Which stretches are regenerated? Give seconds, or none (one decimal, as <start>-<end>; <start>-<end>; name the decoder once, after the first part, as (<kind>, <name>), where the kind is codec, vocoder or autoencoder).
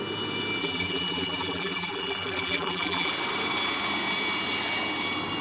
0.6-3.1 (vocoder, BigVGAN v2)